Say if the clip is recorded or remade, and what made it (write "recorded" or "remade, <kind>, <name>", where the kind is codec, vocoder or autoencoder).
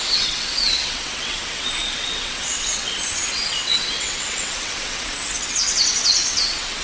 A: remade, vocoder, WaveNeXt